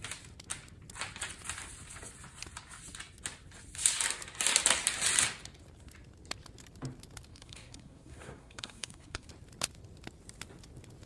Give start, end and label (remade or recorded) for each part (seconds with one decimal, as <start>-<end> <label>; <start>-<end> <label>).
0.0-7.3 recorded; 7.3-9.3 remade; 9.3-11.1 recorded